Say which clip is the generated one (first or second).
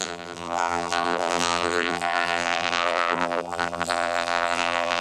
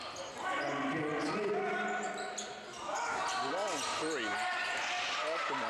first